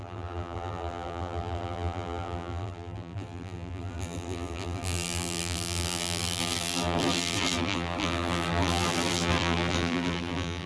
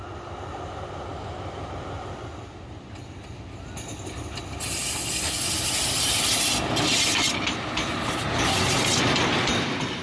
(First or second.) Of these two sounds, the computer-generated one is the first